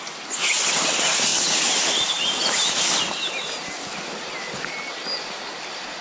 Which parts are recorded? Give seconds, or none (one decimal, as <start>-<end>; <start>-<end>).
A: 0.0-6.0